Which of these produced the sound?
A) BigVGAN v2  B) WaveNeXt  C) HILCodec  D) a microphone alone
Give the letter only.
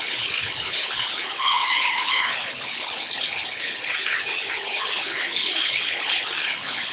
C